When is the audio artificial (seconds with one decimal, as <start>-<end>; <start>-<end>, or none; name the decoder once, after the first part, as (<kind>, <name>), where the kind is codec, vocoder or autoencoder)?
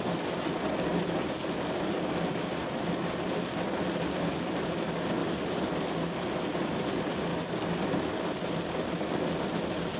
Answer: none